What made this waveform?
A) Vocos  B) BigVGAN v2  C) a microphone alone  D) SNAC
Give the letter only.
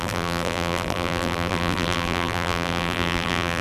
B